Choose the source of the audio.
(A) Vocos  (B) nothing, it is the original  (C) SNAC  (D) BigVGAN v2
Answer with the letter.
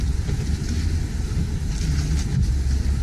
B